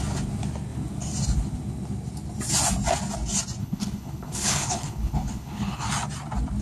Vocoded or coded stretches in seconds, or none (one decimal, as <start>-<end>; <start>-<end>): 3.6-5.9